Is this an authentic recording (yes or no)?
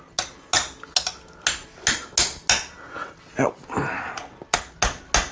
yes